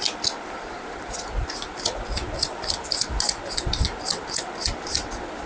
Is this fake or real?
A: real